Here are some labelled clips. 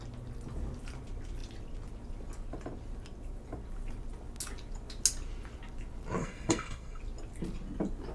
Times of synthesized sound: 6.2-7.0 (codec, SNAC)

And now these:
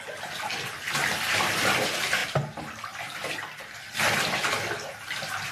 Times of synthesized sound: none